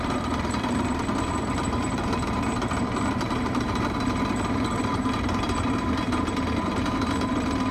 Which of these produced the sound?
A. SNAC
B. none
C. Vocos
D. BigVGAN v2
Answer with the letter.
D